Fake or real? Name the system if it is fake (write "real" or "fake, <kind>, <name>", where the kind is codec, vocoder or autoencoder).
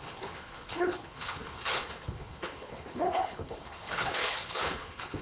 fake, codec, HILCodec